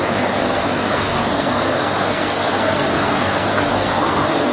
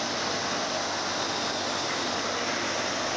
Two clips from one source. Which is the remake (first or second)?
first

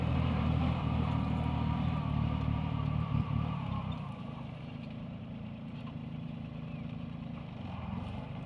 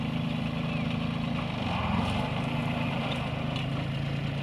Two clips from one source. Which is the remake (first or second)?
first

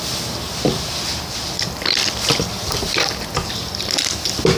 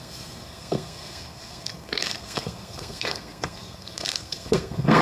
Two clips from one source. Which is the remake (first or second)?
second